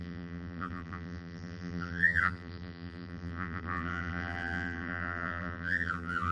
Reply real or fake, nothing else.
fake